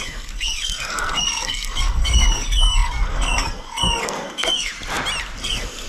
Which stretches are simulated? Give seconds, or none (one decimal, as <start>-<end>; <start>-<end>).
0.0-4.7; 5.4-5.9